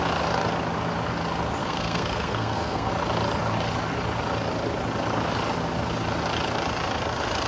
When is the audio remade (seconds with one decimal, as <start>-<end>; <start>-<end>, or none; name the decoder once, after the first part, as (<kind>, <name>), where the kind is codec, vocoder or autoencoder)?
1.6-2.9 (codec, SNAC)